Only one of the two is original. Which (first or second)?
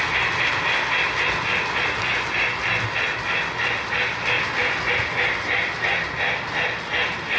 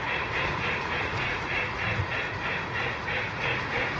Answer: first